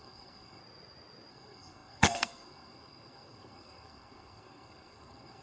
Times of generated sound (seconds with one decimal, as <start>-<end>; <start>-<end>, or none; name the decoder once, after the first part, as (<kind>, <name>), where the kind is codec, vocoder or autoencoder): 0.0-0.6 (codec, SNAC); 1.3-5.4